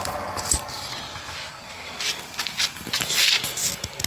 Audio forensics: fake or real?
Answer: real